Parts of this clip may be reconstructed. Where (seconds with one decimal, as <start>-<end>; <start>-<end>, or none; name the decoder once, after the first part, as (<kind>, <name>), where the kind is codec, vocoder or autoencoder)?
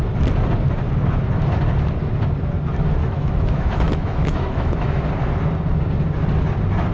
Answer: 3.0-5.0 (autoencoder, DAC-VAE)